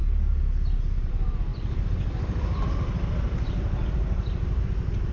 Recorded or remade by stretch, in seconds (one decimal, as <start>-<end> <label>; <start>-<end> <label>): 0.0-5.1 recorded